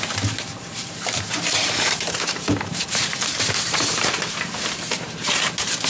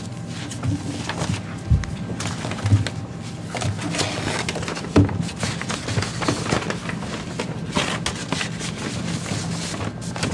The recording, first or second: second